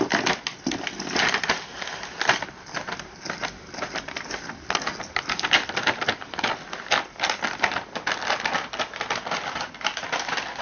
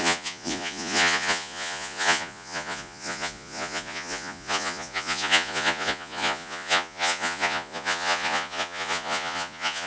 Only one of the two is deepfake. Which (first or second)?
second